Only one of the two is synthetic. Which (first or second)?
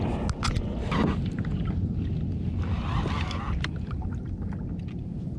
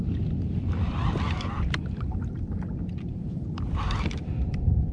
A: second